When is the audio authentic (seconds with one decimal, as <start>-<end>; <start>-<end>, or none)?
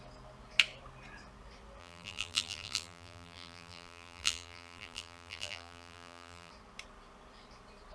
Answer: 0.0-1.8; 6.5-7.9